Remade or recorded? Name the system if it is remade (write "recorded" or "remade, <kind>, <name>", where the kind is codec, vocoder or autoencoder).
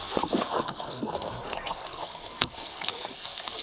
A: remade, codec, SNAC